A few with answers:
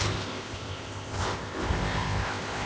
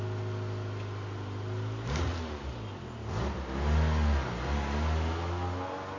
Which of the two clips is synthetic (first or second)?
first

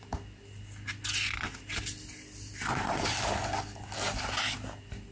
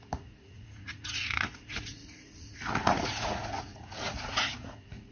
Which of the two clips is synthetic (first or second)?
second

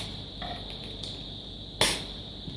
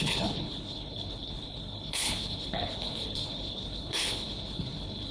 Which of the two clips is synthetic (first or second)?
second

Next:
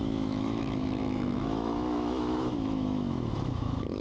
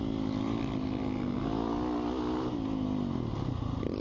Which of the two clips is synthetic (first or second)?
first